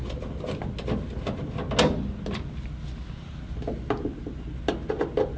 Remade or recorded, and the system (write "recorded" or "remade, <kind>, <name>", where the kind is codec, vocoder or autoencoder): recorded